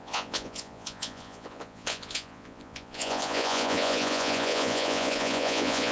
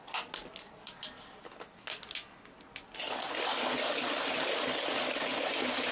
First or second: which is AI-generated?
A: first